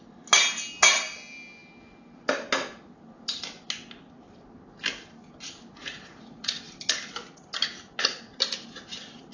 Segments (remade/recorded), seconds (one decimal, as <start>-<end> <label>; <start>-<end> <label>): 0.0-5.8 recorded; 5.8-6.5 remade; 6.5-9.3 recorded